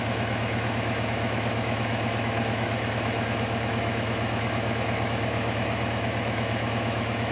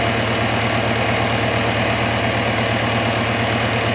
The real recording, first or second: second